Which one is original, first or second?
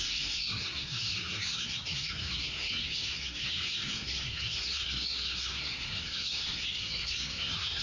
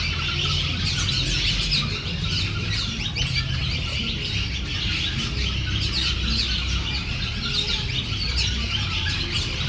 second